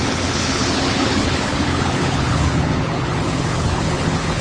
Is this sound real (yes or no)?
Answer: no